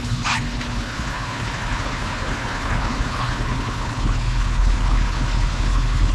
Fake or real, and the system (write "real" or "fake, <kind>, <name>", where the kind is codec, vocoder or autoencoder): fake, codec, HILCodec